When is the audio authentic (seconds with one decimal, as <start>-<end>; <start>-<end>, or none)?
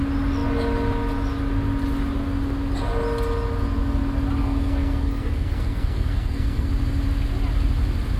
0.0-4.4; 6.7-8.2